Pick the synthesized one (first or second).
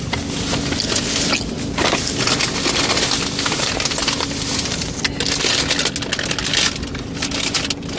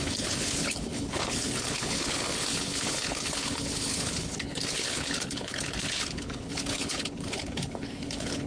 second